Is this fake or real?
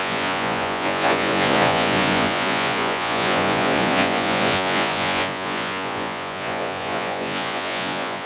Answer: fake